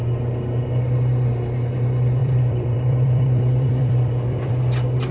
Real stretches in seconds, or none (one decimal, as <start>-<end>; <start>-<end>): 0.0-2.2; 4.5-5.1